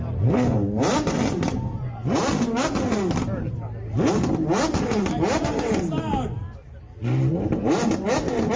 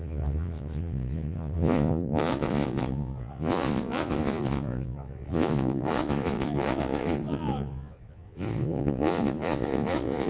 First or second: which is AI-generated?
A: second